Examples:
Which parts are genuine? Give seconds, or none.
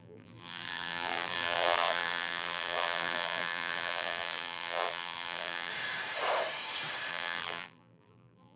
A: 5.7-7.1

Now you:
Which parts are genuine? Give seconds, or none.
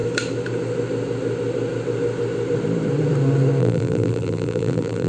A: 0.0-3.6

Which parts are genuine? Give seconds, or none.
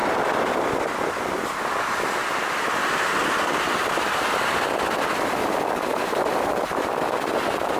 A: 0.0-5.9; 6.5-7.8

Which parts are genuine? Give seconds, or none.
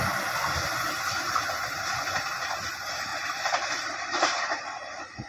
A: 0.0-3.1; 4.3-5.3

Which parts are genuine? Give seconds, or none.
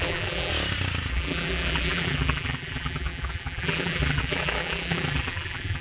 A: 0.5-1.1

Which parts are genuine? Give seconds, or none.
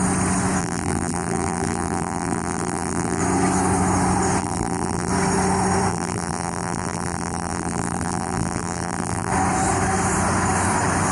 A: 0.0-0.6; 3.2-4.4; 5.1-5.9; 9.3-11.1